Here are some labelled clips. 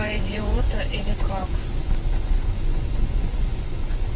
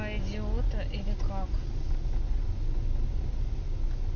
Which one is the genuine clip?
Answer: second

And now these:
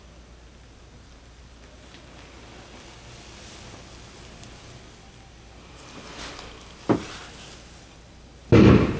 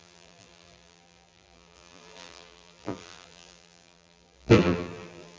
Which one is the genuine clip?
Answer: first